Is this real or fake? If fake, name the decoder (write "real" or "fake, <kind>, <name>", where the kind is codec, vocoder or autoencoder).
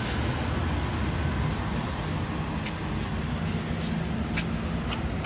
real